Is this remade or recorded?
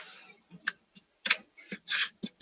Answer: remade